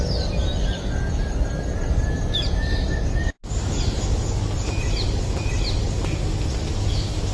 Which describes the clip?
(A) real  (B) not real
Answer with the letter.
A